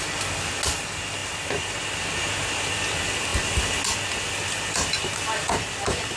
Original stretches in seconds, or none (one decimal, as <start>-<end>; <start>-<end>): 0.0-6.2